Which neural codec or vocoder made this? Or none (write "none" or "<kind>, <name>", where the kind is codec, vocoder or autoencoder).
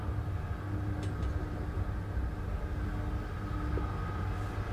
none